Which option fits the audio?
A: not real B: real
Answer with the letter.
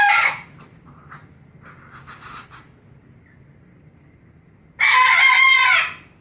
B